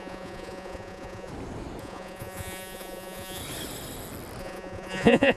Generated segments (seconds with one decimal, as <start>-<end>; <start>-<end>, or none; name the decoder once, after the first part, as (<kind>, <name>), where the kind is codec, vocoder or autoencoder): 0.0-1.3 (vocoder, Vocos); 1.8-3.4; 4.4-5.4